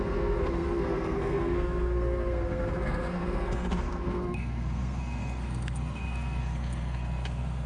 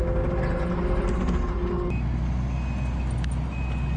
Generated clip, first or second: first